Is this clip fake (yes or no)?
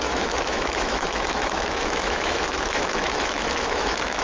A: yes